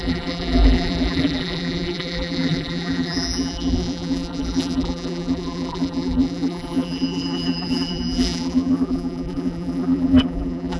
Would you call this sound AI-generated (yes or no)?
yes